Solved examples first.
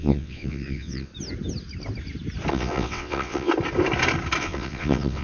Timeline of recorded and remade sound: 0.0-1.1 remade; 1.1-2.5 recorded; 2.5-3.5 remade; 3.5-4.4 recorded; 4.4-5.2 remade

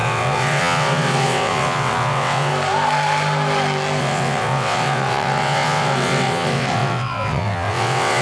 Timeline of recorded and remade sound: 0.0-2.5 remade; 2.5-4.0 recorded; 4.0-8.2 remade

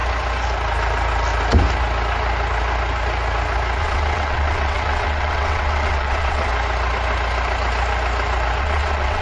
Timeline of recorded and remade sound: 0.0-3.8 recorded; 3.8-6.5 remade; 6.5-8.6 recorded; 8.6-9.2 remade

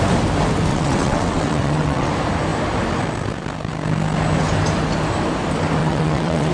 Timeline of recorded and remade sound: 0.0-0.7 recorded; 0.7-2.1 remade; 2.1-5.8 recorded; 5.8-6.5 remade

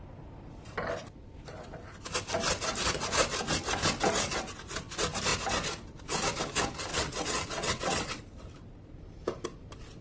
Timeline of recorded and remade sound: 0.0-6.9 recorded; 6.9-8.2 remade; 8.2-10.0 recorded

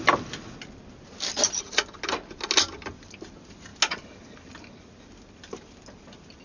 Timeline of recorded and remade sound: 0.0-6.4 recorded

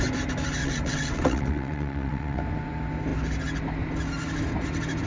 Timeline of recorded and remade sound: 0.0-0.6 recorded; 0.6-2.4 remade; 2.4-5.1 recorded

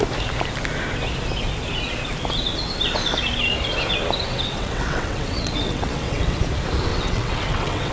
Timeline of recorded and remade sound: 0.0-4.3 recorded; 4.3-6.4 remade; 6.4-6.9 recorded; 6.9-7.9 remade